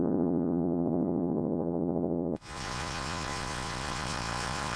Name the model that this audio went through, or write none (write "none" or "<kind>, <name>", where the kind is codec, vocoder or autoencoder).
vocoder, Vocos